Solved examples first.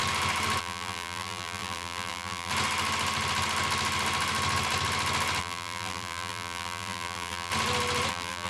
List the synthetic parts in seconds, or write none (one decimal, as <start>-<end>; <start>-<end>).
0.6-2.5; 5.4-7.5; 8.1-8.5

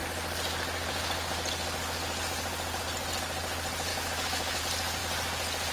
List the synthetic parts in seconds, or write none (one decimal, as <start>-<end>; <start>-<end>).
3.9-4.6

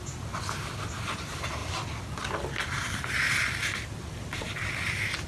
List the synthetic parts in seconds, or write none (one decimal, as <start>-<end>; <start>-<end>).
none

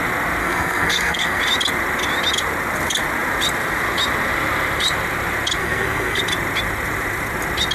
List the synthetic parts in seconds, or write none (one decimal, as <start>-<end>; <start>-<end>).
0.4-1.4; 5.6-6.2